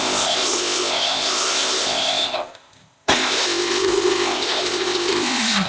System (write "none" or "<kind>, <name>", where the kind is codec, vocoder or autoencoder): codec, ZipCodec